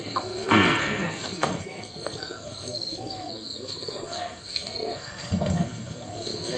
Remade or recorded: remade